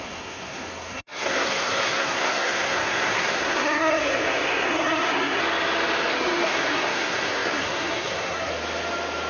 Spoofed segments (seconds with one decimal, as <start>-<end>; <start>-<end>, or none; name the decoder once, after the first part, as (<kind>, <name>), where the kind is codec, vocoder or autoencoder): 0.0-5.4 (codec, SNAC); 6.1-8.5